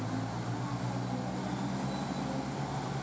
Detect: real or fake real